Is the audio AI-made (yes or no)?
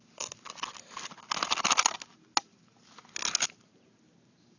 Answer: no